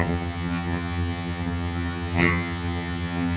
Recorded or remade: remade